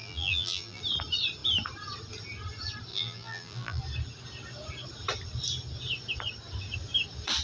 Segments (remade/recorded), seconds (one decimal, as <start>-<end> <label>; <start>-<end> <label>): 0.0-0.8 remade; 0.8-2.9 recorded; 2.9-3.8 remade; 3.8-7.4 recorded